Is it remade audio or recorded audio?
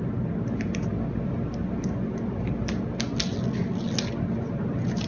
recorded